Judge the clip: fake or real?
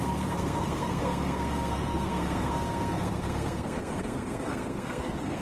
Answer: fake